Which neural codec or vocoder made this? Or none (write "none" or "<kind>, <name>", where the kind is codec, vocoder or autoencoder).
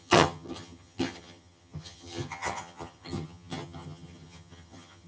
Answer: vocoder, HiFi-GAN